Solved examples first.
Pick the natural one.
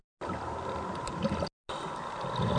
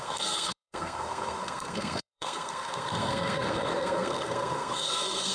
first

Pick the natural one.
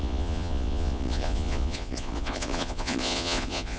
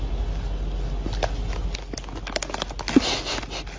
second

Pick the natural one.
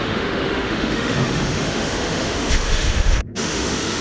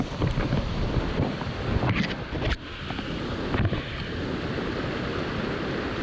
second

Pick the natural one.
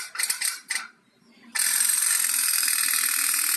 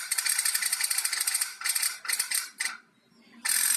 second